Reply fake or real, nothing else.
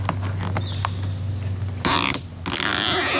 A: real